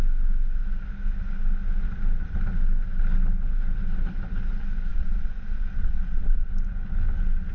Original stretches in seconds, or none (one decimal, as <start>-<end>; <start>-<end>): 0.0-4.9; 6.5-7.5